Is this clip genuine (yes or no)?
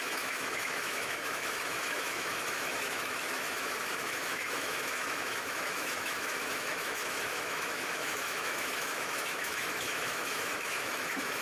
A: no